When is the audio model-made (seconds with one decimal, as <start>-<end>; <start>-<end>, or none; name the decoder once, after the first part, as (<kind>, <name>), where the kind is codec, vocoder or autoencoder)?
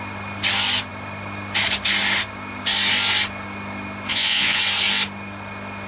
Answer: 4.1-4.6 (vocoder, Vocos)